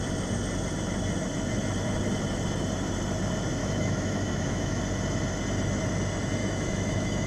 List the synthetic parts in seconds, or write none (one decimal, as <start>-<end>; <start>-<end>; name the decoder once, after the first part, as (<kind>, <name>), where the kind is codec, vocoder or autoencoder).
3.6-4.8 (autoencoder, DAC-VAE); 6.4-7.3